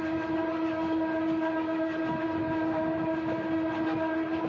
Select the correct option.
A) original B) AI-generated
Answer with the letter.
A